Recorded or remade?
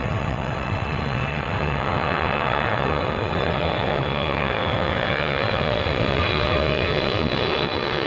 remade